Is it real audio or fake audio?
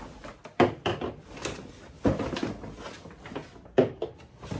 real